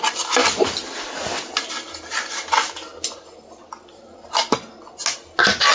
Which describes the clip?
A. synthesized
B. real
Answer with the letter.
B